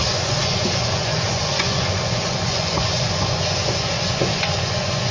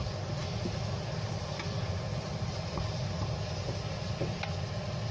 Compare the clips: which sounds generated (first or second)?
first